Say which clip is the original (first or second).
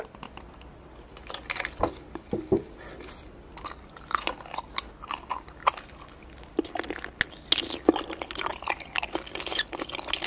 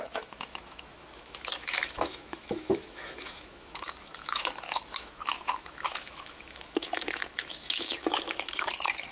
first